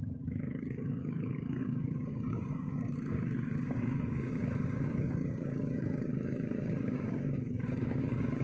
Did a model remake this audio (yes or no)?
yes